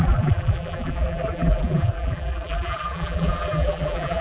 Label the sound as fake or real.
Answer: fake